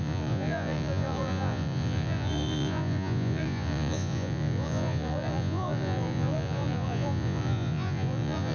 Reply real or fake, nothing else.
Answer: fake